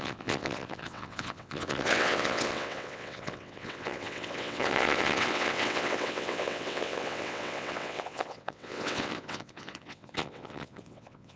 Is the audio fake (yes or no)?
yes